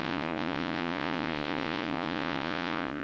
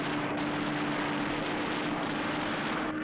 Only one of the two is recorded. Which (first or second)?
second